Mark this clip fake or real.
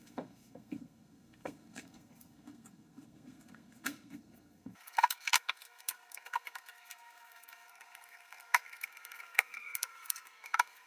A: fake